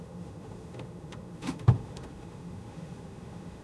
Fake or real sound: fake